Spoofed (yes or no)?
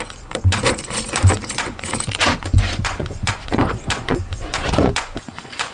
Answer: yes